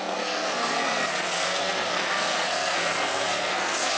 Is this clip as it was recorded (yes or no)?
no